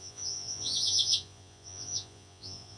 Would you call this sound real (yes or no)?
no